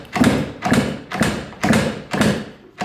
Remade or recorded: recorded